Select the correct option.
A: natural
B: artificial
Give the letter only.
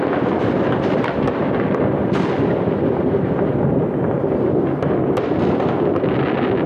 A